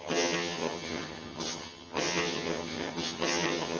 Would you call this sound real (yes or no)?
no